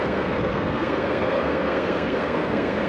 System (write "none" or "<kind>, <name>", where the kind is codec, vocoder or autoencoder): codec, SNAC